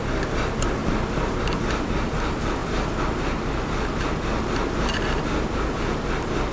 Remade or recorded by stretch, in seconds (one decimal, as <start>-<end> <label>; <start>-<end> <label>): 0.0-6.5 recorded